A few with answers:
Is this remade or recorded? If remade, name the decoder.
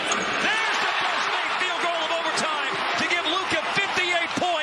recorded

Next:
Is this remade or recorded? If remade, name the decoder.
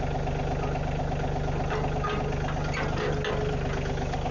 recorded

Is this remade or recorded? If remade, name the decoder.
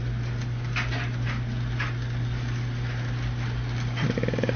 recorded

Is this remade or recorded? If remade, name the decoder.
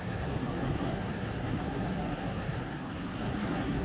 remade, codec, SNAC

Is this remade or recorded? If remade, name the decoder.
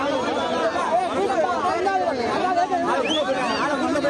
recorded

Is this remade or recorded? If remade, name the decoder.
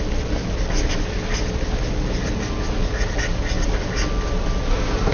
recorded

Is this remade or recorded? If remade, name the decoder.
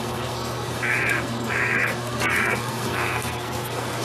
remade, codec, SNAC